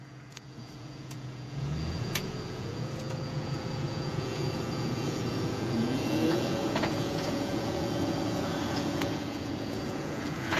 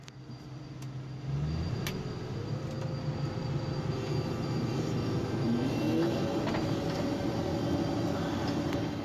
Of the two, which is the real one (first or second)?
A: second